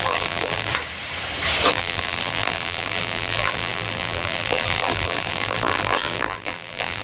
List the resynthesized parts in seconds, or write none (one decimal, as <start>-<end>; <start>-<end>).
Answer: 0.0-0.7; 1.7-7.0